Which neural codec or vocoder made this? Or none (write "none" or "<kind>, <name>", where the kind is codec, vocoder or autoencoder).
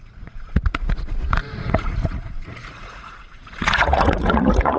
vocoder, Vocos